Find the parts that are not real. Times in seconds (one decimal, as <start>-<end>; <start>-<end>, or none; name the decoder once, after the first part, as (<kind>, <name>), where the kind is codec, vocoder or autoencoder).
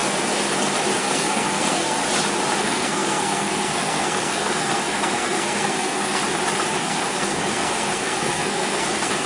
1.0-2.0 (codec, SNAC); 2.6-6.2; 6.8-9.3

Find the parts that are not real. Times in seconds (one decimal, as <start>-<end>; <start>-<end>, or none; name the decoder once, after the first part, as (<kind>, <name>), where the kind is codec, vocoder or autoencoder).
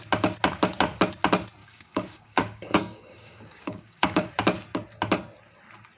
1.6-4.3 (codec, DAC)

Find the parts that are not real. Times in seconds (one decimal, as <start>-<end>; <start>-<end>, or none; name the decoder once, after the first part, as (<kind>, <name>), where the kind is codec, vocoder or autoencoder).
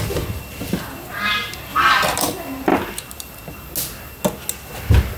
none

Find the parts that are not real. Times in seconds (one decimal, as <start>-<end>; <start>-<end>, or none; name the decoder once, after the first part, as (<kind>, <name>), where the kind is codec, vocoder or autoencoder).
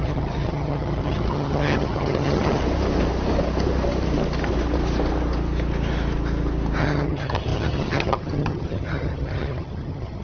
0.0-2.6 (vocoder, HiFi-GAN); 6.8-10.2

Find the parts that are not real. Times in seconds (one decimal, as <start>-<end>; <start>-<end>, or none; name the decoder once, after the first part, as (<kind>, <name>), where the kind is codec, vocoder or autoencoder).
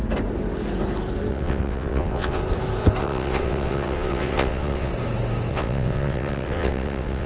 1.3-2.4 (vocoder, WaveNeXt); 3.0-4.9; 5.5-7.3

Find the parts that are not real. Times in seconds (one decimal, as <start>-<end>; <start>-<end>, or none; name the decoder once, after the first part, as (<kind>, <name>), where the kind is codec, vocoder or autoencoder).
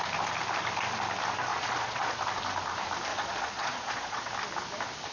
1.5-2.2 (vocoder, Vocos); 3.1-4.3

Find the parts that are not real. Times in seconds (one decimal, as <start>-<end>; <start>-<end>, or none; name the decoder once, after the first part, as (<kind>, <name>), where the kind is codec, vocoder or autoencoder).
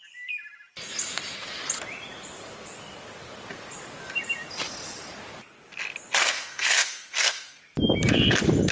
6.2-7.6 (codec, SNAC)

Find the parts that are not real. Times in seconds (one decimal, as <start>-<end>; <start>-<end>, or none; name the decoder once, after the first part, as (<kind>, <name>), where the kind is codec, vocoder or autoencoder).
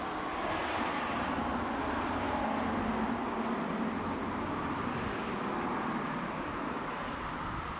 none